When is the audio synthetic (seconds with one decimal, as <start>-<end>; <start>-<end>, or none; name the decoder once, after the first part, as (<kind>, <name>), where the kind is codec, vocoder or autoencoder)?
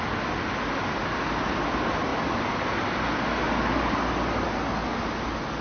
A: none